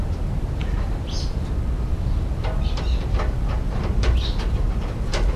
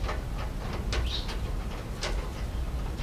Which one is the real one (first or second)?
second